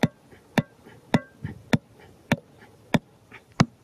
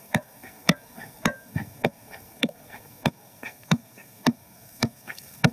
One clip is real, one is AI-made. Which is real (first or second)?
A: first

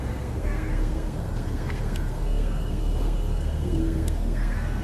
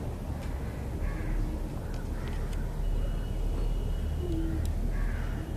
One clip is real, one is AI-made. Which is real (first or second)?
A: second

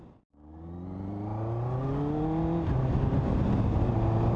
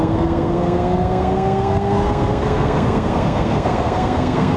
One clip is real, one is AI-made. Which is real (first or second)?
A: first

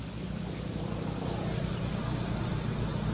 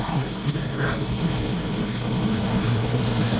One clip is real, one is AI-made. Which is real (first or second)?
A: first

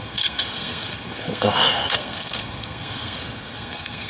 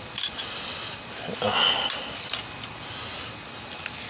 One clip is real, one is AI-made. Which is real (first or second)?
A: second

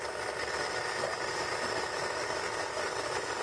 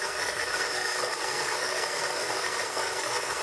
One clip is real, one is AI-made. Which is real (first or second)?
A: first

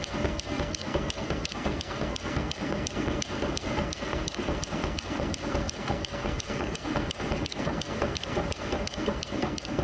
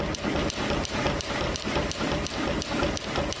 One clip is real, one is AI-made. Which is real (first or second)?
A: second